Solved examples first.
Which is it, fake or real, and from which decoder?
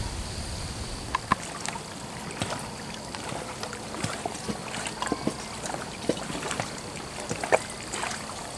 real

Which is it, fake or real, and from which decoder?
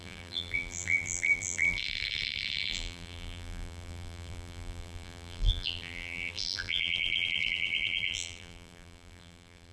fake, vocoder, BigVGAN v2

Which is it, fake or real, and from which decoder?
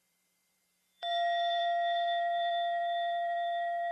fake, vocoder, BigVGAN v2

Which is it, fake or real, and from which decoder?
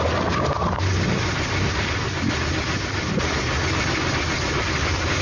real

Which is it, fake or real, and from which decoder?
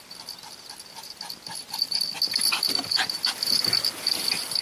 real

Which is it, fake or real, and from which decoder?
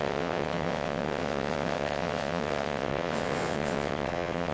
fake, vocoder, WaveNeXt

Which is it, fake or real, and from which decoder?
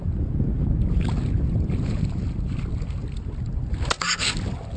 real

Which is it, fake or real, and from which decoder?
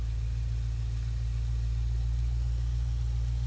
real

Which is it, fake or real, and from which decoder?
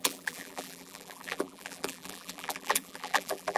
fake, vocoder, BigVGAN v2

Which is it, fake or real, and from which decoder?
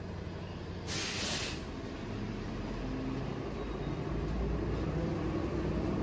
real